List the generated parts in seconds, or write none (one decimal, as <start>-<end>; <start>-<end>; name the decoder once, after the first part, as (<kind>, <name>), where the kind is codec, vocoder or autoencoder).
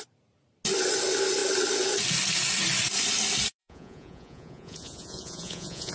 3.6-5.9 (vocoder, Vocos)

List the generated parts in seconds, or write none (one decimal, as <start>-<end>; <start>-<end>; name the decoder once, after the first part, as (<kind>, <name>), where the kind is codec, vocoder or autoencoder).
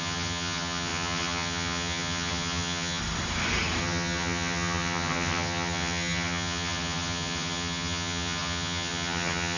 0.0-3.0 (vocoder, HiFi-GAN); 3.8-9.6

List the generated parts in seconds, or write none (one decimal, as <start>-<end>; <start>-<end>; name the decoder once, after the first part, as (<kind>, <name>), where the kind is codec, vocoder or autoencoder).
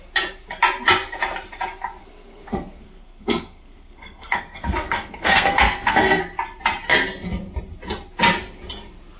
2.0-6.2 (codec, SNAC)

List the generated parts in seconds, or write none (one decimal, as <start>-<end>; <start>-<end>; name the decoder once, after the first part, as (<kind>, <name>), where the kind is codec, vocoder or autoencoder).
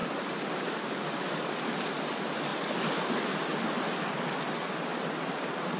0.0-0.9 (vocoder, BigVGAN v2)